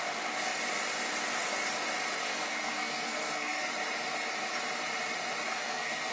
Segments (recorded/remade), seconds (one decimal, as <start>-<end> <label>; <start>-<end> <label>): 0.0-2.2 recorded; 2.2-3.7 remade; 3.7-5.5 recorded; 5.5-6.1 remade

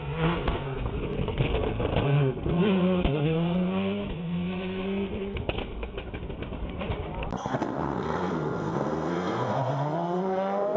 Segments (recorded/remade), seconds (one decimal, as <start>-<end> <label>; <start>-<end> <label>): 0.0-6.0 remade; 6.0-7.5 recorded; 7.5-10.8 remade

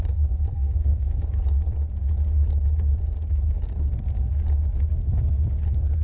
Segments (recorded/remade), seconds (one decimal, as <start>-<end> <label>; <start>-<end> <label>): 0.0-0.5 recorded; 0.5-1.2 remade; 1.2-6.0 recorded